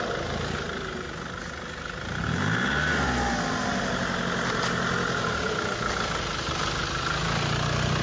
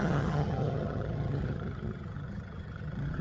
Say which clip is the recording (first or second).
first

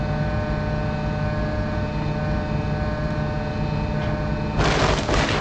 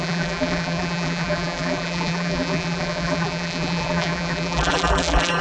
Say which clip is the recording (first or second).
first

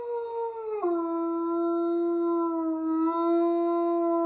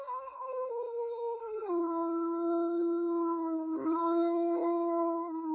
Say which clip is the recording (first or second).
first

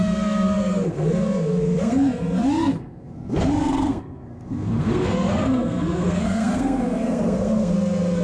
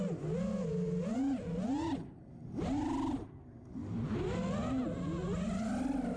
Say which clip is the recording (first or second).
second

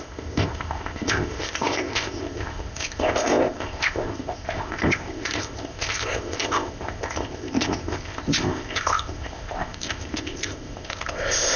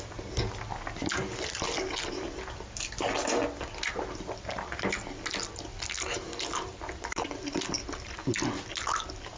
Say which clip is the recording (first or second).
second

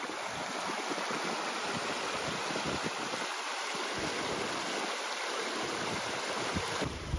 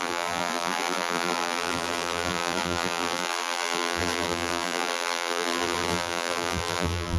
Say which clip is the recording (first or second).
first